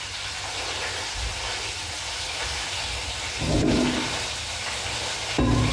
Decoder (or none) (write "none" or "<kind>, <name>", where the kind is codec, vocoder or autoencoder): none